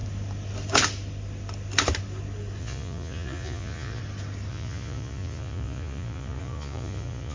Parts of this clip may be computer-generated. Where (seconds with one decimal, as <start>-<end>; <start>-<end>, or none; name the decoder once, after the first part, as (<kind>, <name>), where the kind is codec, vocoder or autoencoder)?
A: 2.6-4.0 (vocoder, Vocos); 4.5-7.3